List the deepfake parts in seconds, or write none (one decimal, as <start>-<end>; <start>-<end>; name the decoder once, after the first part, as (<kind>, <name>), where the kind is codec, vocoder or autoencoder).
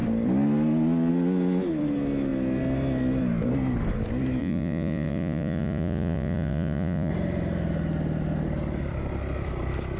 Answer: 4.4-7.1 (vocoder, Vocos)